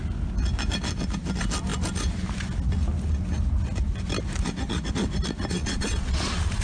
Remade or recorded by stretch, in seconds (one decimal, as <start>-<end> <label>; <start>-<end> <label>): 0.0-5.6 recorded; 5.6-6.6 remade